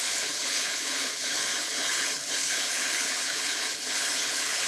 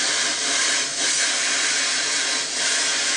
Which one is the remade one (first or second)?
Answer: first